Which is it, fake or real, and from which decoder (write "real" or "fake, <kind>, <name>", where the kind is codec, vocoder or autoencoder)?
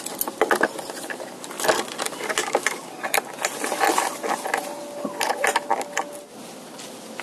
real